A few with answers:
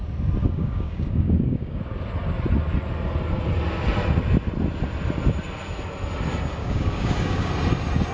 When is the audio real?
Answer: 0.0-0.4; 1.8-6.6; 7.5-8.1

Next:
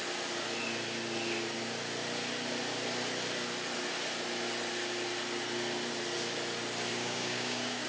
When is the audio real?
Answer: 0.0-6.9

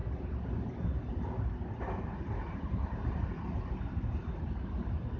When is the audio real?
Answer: 0.0-5.2

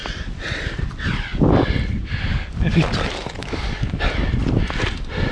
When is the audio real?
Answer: 0.0-2.3; 2.9-3.4; 4.0-5.3

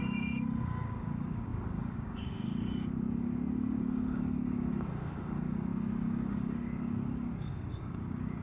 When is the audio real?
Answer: none

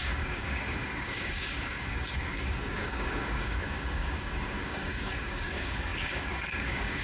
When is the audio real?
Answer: none